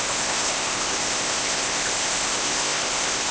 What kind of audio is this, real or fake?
fake